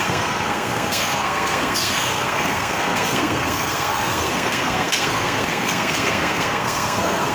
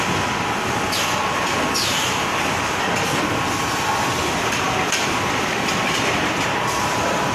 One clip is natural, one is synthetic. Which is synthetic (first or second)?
first